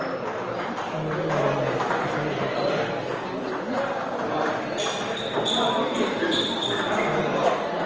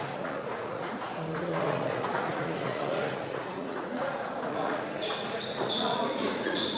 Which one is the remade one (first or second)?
second